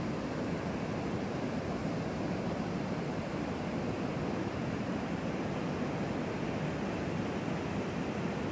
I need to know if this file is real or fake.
real